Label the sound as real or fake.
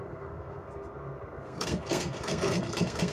fake